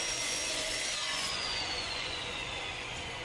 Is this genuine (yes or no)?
no